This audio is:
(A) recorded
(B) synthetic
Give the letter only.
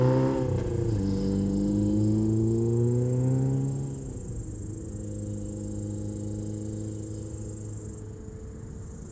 A